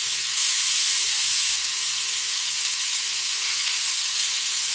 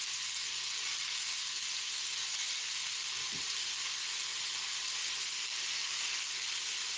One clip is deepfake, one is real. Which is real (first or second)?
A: second